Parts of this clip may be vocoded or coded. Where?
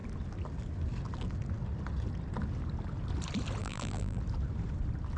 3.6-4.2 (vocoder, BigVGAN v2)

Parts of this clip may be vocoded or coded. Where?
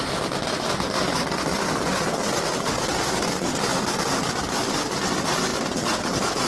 none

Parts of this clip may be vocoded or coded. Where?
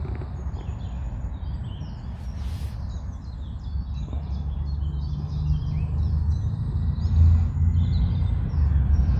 2.0-2.7 (vocoder, BigVGAN v2)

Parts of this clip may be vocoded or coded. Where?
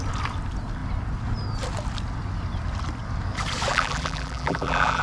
3.7-5.0 (vocoder, BigVGAN v2)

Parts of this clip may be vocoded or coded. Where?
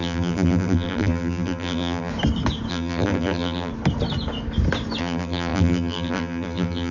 0.0-2.1 (vocoder, BigVGAN v2); 2.7-3.7; 5.0-6.9